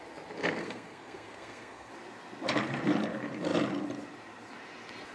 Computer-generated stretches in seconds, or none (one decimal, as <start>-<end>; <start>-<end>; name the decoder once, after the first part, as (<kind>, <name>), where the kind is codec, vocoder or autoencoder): 0.6-1.9 (codec, SNAC)